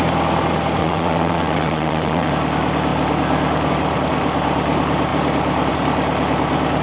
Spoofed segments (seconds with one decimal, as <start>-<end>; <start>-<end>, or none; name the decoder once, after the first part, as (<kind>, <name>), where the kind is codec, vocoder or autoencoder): 0.8-2.3 (vocoder, WaveNeXt)